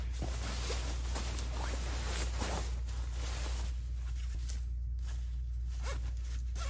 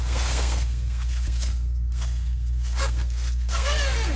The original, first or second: first